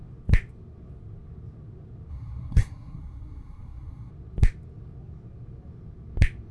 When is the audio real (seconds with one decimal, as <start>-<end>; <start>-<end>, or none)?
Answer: 0.0-2.1; 4.1-6.5